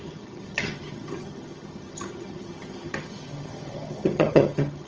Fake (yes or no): yes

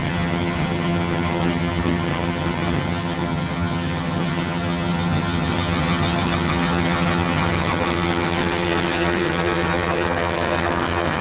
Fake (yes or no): yes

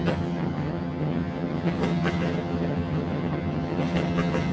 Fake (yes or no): yes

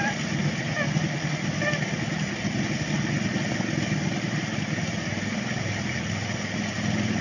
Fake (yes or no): no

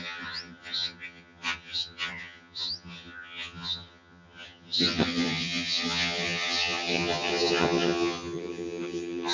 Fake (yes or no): yes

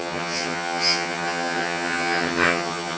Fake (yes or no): yes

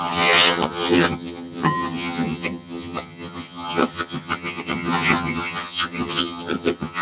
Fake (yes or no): yes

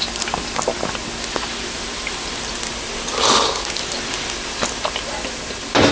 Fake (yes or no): no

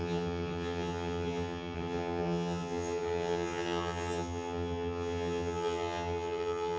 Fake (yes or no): yes